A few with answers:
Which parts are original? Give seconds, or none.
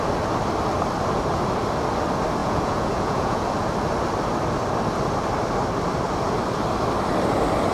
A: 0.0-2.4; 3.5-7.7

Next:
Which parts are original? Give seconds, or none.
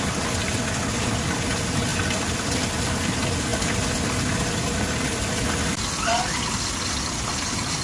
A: 0.0-1.9; 3.1-7.8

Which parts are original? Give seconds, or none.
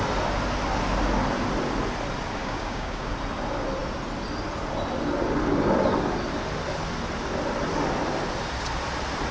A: 0.0-2.4; 3.1-9.3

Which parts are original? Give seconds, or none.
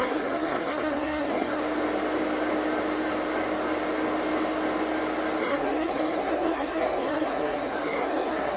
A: 1.6-5.4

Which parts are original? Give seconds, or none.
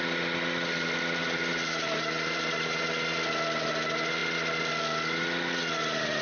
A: 0.0-1.2; 2.8-6.2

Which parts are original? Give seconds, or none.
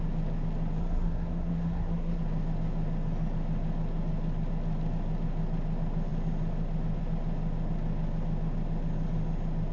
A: 0.0-0.8; 2.2-9.7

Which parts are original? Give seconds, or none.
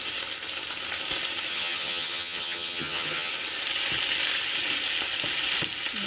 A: 0.0-1.5; 3.3-6.1